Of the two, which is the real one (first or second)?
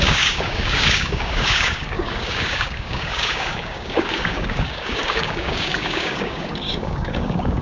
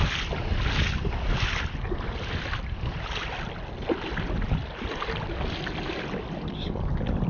second